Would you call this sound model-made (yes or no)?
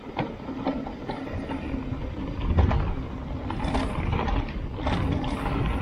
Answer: no